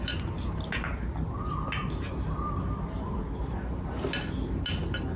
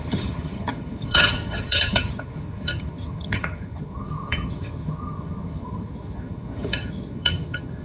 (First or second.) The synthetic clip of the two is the second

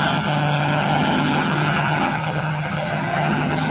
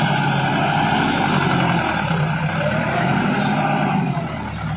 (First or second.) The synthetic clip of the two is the first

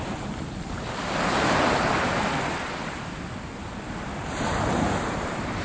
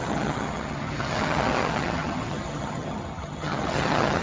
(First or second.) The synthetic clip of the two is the second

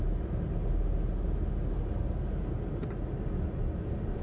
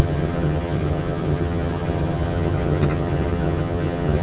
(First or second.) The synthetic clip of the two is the second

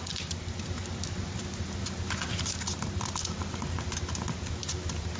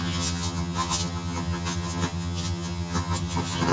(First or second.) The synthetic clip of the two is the second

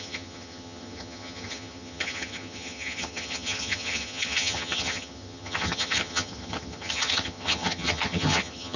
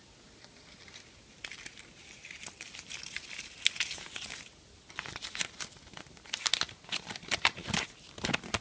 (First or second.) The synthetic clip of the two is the first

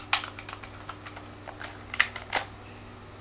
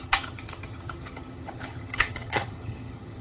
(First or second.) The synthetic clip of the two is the second